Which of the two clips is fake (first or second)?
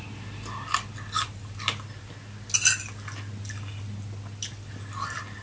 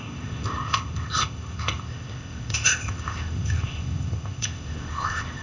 second